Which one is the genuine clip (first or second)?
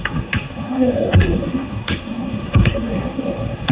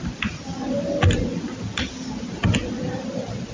second